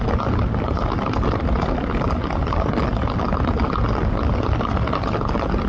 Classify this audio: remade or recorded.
recorded